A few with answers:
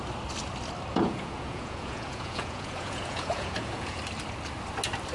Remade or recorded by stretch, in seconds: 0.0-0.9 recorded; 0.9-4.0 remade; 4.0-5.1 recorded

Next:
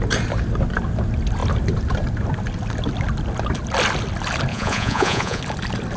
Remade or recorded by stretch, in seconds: 0.0-4.5 recorded; 4.5-5.4 remade; 5.4-6.0 recorded

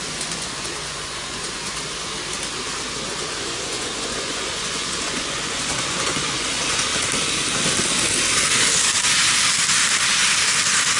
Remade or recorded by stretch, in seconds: 0.0-2.1 remade; 2.1-2.9 recorded; 2.9-6.9 remade; 6.9-11.0 recorded

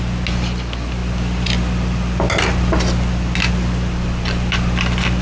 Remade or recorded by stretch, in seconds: 0.0-5.2 recorded

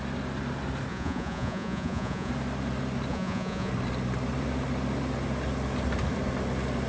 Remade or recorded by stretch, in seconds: 0.0-0.9 recorded; 0.9-2.3 remade; 2.3-3.1 recorded; 3.1-3.7 remade; 3.7-6.9 recorded

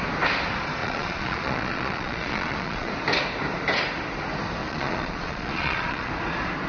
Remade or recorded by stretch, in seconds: 0.0-0.8 recorded; 0.8-2.9 remade; 2.9-4.6 recorded; 4.6-6.1 remade; 6.1-6.7 recorded

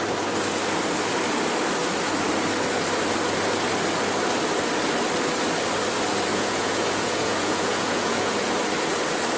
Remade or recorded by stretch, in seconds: 0.0-6.3 recorded; 6.3-8.3 remade; 8.3-9.4 recorded

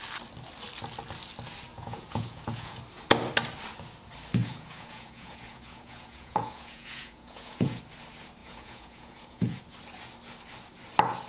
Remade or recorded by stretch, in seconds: 0.0-1.7 recorded; 1.7-2.8 remade; 2.8-4.4 recorded; 4.4-7.8 remade; 7.8-8.4 recorded; 8.4-9.6 remade; 9.6-11.3 recorded